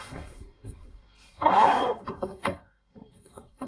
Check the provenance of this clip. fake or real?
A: fake